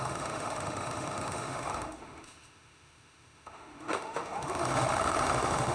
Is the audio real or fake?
fake